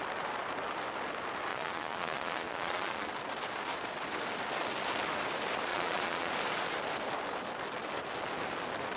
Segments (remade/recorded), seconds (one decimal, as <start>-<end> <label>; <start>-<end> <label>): 0.0-1.5 recorded; 1.5-3.1 remade; 3.1-5.7 recorded; 5.7-6.3 remade; 6.3-9.0 recorded